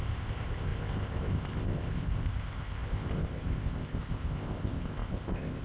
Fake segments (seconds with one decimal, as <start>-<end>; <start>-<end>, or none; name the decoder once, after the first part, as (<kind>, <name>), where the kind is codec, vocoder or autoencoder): 0.0-5.6 (codec, ZipCodec)